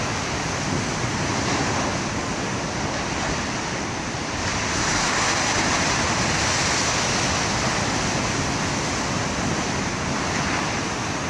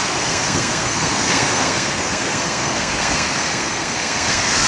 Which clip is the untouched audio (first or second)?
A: first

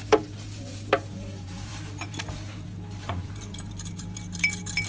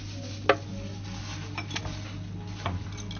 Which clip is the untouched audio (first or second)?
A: second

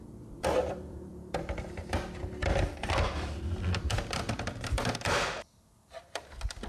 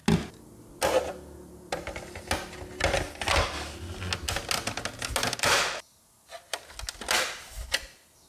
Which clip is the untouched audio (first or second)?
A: second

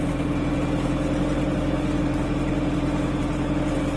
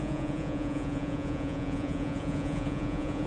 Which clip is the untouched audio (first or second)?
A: first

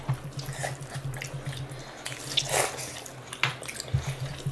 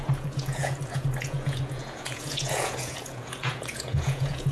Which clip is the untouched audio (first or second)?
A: first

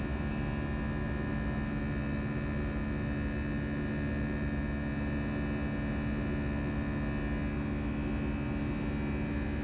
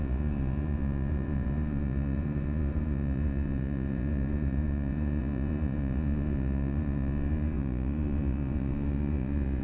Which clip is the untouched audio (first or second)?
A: first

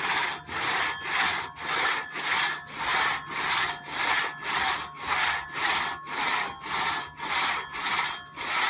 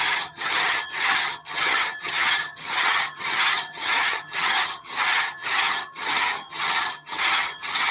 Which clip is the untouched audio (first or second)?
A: first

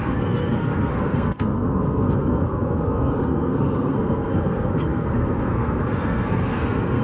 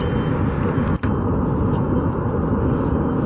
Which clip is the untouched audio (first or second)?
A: second